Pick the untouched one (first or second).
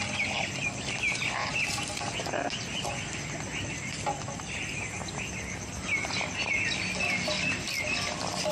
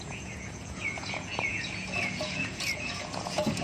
first